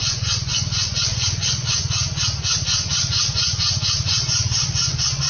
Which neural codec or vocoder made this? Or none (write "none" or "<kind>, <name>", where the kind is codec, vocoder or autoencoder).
vocoder, Vocos